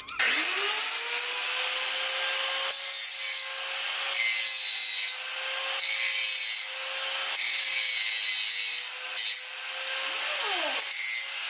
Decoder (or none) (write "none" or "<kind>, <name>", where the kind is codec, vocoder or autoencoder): none